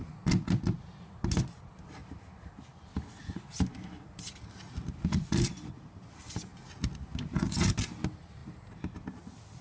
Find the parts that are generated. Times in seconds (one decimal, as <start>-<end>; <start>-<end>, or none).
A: 2.0-4.3